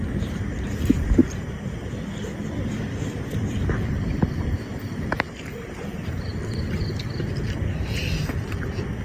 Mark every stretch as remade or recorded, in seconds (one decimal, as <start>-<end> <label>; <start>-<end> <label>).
0.0-1.2 remade; 1.2-3.5 recorded; 3.5-6.3 remade; 6.3-7.6 recorded; 7.6-9.0 remade